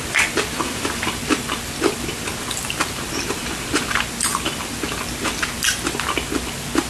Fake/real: real